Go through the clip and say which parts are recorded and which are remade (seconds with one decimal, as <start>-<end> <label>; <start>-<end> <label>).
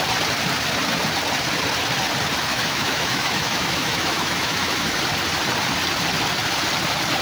0.0-2.5 recorded; 2.5-5.0 remade; 5.0-7.2 recorded